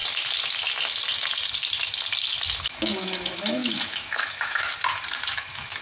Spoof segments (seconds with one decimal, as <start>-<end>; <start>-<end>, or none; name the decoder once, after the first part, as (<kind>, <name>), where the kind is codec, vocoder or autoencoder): 2.6-4.7 (autoencoder, DAC-VAE); 5.3-5.8